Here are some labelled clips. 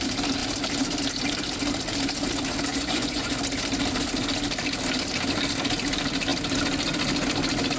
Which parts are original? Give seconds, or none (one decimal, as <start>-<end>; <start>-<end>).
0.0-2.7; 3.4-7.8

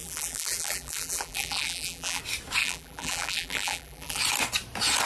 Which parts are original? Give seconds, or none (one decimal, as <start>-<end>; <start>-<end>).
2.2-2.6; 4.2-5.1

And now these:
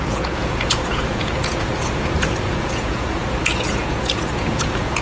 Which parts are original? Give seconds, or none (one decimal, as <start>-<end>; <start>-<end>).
none

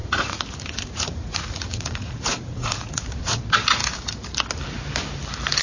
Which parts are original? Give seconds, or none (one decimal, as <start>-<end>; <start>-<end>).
3.4-5.6